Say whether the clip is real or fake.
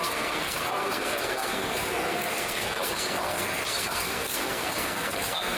fake